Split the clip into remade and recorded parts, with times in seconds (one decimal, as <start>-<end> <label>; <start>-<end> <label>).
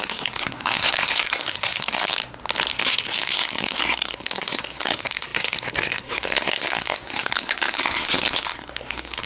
0.0-2.2 remade; 2.2-2.8 recorded; 2.8-9.3 remade